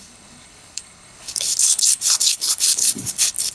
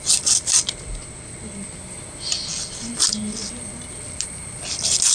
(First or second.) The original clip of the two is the second